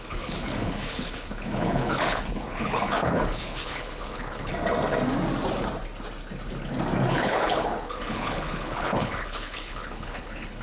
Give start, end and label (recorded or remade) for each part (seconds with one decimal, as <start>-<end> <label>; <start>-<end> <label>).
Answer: 0.0-4.5 remade; 4.5-7.1 recorded; 7.1-10.6 remade